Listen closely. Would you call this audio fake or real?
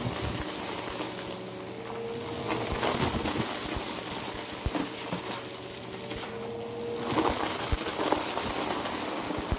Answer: real